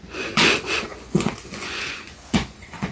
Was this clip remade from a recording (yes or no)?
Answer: yes